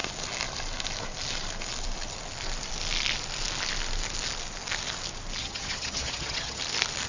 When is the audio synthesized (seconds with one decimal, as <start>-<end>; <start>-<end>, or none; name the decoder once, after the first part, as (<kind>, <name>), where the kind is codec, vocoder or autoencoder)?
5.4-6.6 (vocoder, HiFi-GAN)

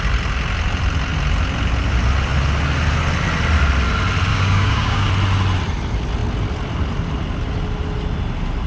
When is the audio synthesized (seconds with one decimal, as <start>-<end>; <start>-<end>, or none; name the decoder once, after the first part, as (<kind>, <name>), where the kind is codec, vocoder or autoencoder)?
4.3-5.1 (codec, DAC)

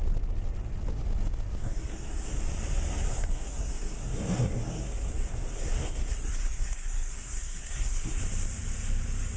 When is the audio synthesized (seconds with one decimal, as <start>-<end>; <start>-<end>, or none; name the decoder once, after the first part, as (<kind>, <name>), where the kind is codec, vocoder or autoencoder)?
1.6-2.4 (codec, SNAC); 3.1-8.2

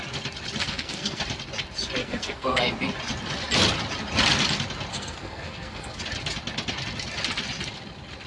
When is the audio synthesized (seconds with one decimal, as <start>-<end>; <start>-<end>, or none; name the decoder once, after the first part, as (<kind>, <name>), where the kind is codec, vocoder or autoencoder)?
0.6-1.2 (codec, SNAC); 2.0-2.6; 4.9-6.0